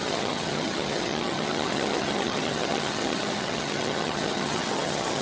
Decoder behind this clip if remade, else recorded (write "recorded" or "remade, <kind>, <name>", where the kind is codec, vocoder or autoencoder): remade, vocoder, HiFi-GAN